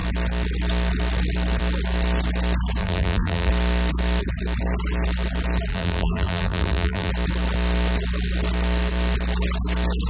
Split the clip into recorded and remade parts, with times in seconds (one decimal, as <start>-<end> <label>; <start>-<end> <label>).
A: 0.0-2.8 recorded; 2.8-3.5 remade; 3.5-5.7 recorded; 5.7-7.1 remade; 7.1-10.1 recorded